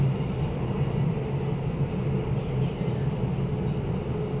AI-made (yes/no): no